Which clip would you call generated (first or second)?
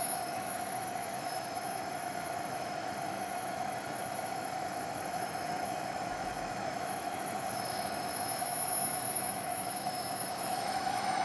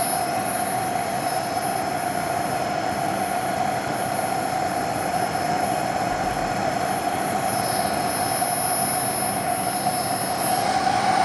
first